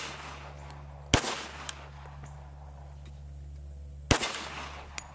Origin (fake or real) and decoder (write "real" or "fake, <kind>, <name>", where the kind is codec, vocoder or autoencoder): real